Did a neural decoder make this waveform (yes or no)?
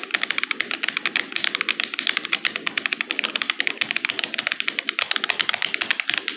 no